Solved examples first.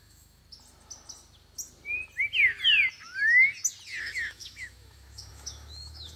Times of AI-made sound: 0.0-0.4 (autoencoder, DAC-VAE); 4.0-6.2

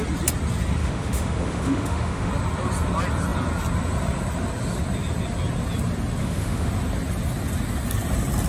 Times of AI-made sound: 0.8-2.3 (autoencoder, DAC-VAE); 6.2-6.7

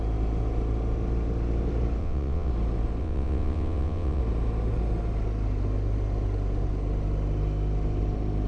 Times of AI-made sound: 2.0-2.5 (vocoder, WaveNeXt); 3.0-4.2

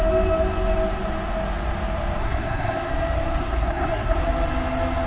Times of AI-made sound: 2.2-2.9 (codec, SNAC); 3.4-4.2

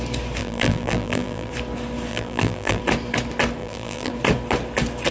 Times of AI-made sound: 0.4-1.5 (vocoder, BigVGAN v2); 2.1-2.8; 3.6-4.1